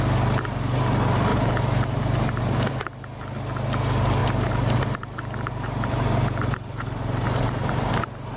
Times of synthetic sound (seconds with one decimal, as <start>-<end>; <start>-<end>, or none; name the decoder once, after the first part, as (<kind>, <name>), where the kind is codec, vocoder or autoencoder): 1.3-2.4 (vocoder, BigVGAN v2); 4.2-8.4